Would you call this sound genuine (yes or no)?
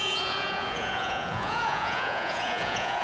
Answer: no